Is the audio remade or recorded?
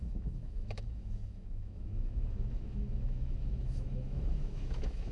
remade